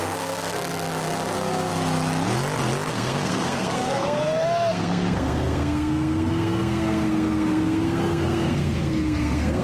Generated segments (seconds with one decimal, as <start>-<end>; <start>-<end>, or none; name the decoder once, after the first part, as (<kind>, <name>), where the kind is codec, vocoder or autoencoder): 0.0-1.7 (codec, SNAC); 2.9-9.6